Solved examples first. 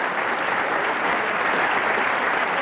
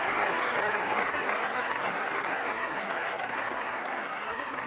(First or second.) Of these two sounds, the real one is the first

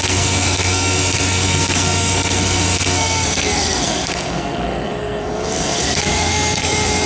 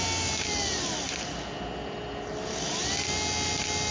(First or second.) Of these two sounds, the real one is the second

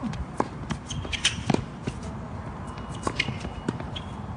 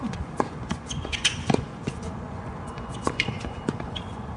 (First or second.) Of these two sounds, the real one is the first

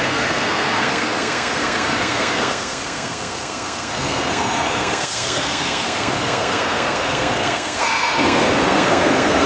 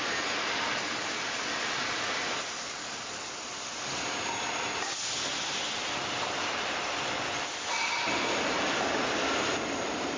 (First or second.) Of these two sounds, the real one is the second